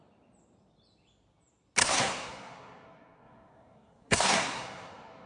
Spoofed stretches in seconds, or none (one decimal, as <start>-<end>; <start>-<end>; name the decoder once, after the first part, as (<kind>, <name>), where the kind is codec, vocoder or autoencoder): 1.8-5.3 (codec, SNAC)